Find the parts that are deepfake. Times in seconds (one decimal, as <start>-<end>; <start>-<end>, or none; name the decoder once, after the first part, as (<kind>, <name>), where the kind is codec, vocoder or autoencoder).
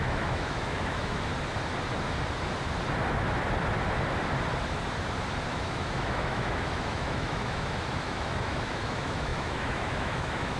0.0-1.3 (autoencoder, DAC-VAE); 5.5-10.6